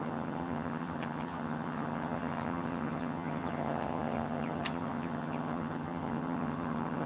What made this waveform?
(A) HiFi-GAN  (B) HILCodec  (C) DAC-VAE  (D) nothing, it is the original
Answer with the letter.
A